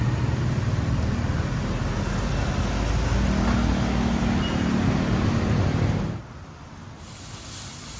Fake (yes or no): no